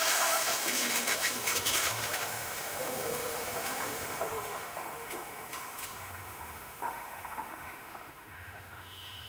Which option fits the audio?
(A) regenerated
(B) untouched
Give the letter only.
A